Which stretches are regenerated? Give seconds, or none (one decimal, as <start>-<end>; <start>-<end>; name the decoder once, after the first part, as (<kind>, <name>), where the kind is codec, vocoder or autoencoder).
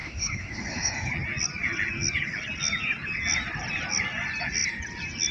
0.0-1.1 (autoencoder, DAC-VAE)